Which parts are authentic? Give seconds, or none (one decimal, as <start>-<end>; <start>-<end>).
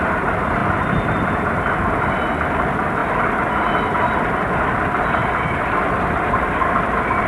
0.0-7.3